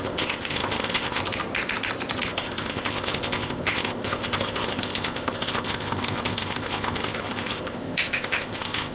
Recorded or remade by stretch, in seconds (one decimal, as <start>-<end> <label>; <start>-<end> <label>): 0.0-1.2 remade; 1.2-2.3 recorded; 2.3-8.9 remade